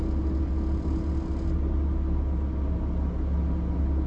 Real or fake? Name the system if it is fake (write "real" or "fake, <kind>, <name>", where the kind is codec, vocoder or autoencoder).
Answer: real